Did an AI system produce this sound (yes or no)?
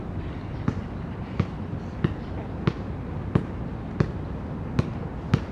no